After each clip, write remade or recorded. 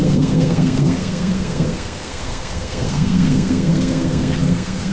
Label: remade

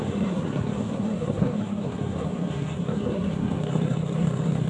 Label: remade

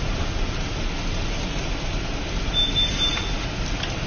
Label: recorded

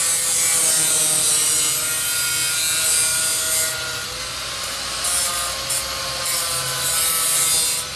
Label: recorded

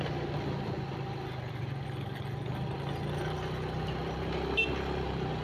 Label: recorded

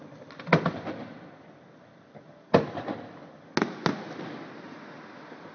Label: recorded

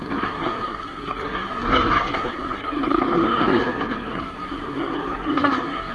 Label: remade